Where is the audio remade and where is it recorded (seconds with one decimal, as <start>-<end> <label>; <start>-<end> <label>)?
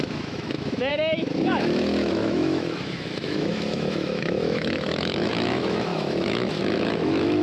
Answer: 0.0-7.4 remade